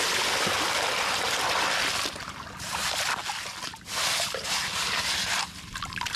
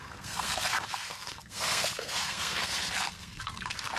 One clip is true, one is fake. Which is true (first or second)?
first